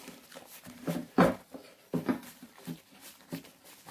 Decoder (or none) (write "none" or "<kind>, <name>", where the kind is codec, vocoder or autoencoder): none